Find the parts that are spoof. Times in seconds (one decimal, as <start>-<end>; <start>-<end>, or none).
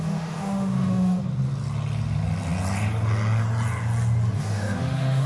0.0-1.2; 4.4-5.3